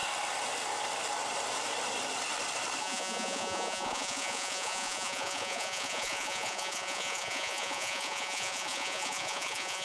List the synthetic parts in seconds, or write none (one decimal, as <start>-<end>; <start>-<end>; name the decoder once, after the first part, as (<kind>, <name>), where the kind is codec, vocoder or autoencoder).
2.8-9.8 (vocoder, Vocos)